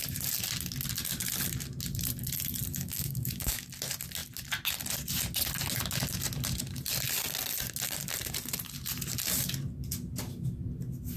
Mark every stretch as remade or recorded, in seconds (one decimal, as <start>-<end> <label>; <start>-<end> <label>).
0.0-2.7 recorded; 2.7-3.7 remade; 3.7-11.2 recorded